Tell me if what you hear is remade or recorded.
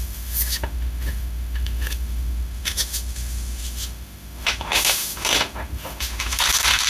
remade